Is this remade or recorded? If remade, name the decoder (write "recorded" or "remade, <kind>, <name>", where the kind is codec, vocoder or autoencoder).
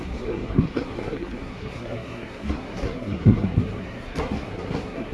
remade, codec, SNAC